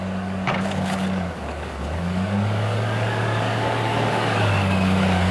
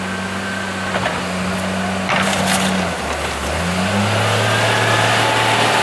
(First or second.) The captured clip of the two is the second